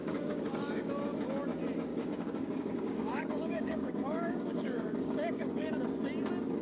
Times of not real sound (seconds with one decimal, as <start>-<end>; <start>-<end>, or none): 0.0-0.9; 1.9-5.8